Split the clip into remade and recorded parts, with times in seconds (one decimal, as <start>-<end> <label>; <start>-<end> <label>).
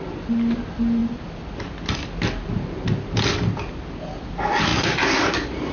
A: 0.0-5.7 recorded